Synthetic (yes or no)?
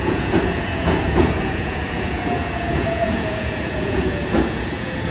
yes